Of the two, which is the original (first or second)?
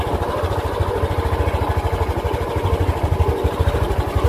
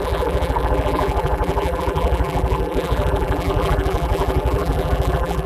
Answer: first